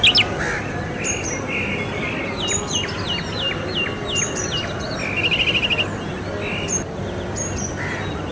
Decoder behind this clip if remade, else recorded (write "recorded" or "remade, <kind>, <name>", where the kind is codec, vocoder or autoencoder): recorded